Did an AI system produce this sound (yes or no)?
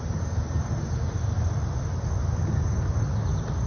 no